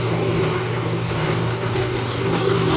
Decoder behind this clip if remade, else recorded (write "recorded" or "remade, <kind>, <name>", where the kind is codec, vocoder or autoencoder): remade, codec, DAC